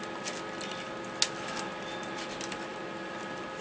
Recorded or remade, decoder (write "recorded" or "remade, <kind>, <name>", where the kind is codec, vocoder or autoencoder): recorded